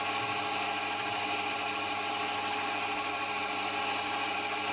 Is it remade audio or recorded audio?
recorded